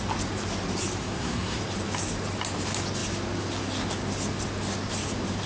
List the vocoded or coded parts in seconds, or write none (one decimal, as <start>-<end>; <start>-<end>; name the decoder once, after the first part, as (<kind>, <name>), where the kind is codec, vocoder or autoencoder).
1.0-1.6 (codec, SNAC)